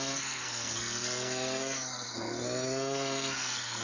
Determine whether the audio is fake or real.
fake